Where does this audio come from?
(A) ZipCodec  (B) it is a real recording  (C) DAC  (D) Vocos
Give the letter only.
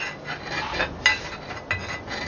B